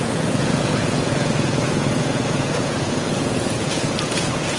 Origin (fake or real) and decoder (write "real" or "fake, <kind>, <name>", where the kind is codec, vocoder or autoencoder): fake, vocoder, Vocos